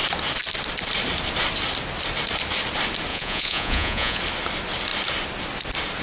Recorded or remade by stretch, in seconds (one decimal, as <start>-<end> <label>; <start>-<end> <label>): 0.0-3.1 recorded; 3.1-4.2 remade; 4.2-6.0 recorded